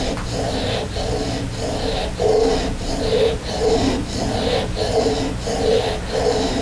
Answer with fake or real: real